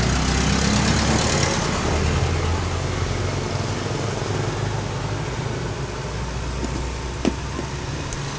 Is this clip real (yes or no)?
yes